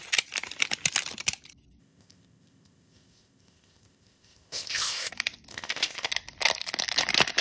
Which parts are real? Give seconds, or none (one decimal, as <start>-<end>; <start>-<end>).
0.0-1.8; 5.1-5.5; 6.1-7.4